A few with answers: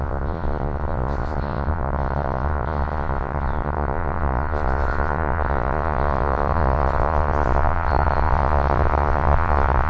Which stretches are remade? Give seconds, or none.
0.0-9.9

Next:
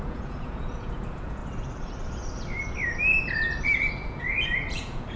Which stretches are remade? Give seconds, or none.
0.0-1.4; 3.9-5.2